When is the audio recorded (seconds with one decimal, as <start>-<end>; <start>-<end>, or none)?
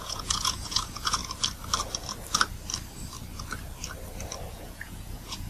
1.2-4.5